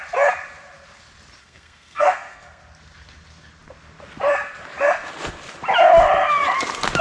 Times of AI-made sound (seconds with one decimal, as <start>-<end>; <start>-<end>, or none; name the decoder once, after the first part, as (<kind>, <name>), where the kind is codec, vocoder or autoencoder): 1.4-2.6 (codec, SNAC)